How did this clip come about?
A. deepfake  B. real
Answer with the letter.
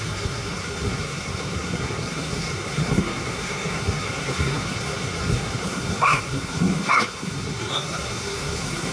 A